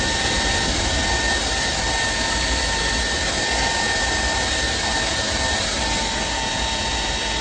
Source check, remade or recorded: recorded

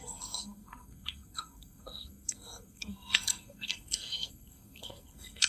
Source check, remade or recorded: remade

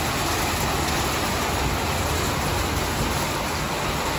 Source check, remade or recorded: recorded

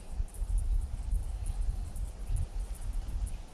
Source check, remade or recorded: recorded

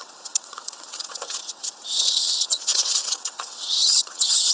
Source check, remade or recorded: remade